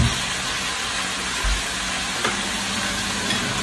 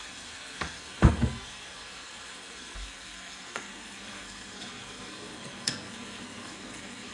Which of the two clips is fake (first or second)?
second